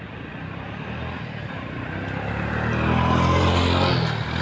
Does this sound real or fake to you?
real